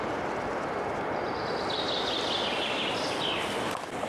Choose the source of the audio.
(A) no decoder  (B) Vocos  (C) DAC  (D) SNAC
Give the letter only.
A